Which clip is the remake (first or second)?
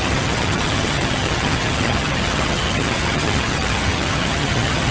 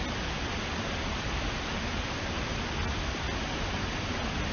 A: first